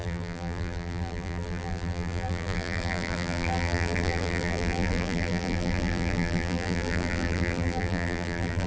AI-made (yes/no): yes